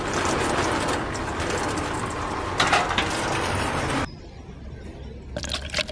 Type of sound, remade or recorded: recorded